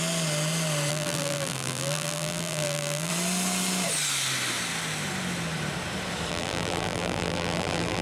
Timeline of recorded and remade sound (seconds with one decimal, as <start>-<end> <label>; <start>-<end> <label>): 0.0-0.9 recorded; 0.9-3.1 remade; 3.1-6.3 recorded; 6.3-8.0 remade